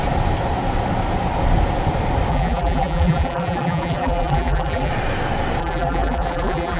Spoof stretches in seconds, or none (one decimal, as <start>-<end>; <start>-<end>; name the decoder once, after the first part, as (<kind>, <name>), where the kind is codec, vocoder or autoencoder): 2.3-4.9 (vocoder, BigVGAN v2); 5.6-6.8